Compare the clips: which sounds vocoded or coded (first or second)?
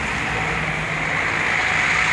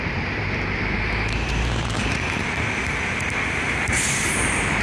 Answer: second